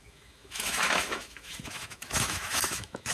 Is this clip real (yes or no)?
no